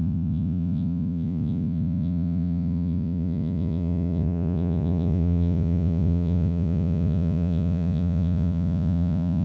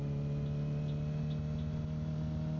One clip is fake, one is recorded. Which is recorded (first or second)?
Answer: second